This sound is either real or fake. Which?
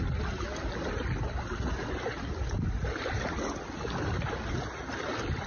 real